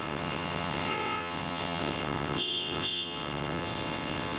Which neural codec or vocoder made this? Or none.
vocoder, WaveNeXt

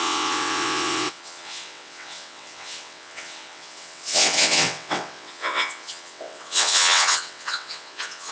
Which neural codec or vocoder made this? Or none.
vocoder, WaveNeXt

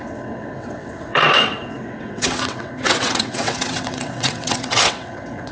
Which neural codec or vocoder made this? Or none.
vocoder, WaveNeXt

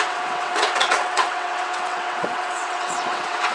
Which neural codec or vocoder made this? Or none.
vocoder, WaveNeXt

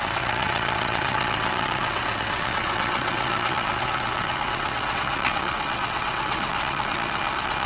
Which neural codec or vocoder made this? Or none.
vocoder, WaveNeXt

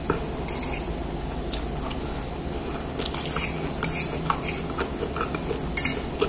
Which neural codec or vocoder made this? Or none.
none